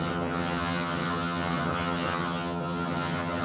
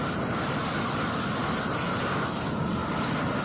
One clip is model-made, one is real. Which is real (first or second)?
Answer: second